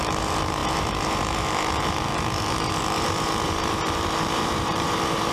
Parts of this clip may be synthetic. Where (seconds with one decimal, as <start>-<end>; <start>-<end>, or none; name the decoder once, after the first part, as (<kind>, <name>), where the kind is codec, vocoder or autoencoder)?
0.0-5.3 (vocoder, BigVGAN v2)